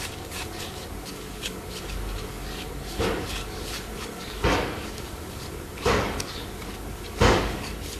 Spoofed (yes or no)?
yes